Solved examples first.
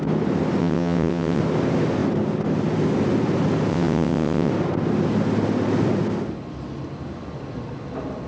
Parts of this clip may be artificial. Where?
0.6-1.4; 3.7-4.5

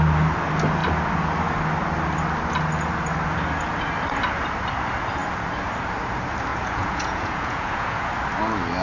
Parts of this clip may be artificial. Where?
6.5-8.1

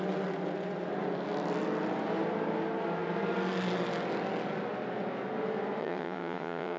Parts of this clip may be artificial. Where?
5.8-6.8